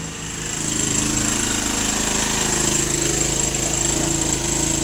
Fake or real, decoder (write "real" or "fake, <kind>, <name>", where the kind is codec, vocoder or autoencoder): real